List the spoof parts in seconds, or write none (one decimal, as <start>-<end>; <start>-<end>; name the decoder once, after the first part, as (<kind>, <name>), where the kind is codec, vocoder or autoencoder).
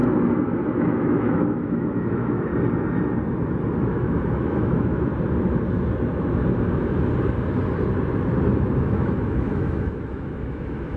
0.8-2.5 (autoencoder, DAC-VAE); 3.7-5.1; 8.8-11.0